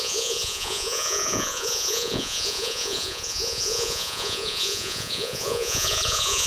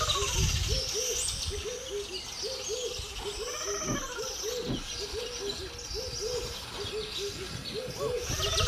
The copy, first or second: first